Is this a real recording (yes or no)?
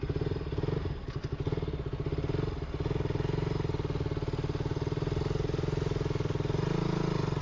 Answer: yes